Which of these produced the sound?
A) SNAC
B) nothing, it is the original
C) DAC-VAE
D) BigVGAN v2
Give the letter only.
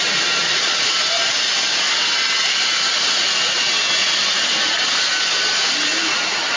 B